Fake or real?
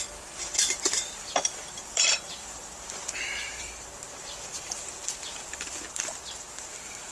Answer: fake